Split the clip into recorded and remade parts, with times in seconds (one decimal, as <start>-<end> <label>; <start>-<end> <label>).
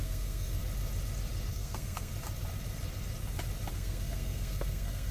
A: 0.0-0.6 remade; 0.6-1.5 recorded; 1.5-2.1 remade; 2.1-3.7 recorded; 3.7-5.1 remade